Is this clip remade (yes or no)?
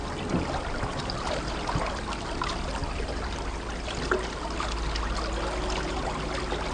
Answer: no